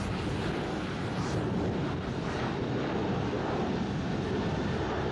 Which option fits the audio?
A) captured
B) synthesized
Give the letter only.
A